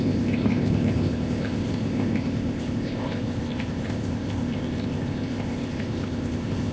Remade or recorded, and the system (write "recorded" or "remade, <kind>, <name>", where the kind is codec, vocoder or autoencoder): remade, codec, ZipCodec